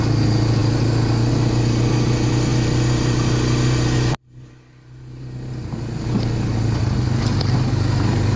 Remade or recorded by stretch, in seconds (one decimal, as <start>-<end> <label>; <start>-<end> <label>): 0.0-8.4 recorded